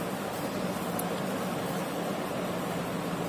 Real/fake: real